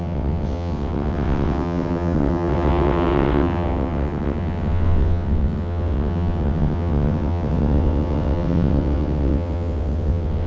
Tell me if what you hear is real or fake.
fake